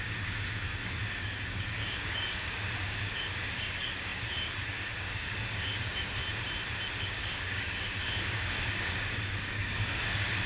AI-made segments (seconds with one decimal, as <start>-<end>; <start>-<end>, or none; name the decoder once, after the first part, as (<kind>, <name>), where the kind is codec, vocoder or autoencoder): 0.0-6.2 (codec, DAC); 7.0-10.5